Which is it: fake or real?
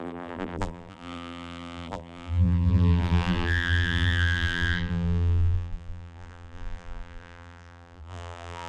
fake